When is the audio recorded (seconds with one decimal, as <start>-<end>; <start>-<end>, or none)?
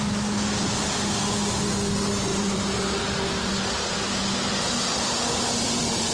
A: 0.0-2.3; 3.0-6.1